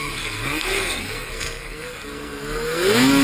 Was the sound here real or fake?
fake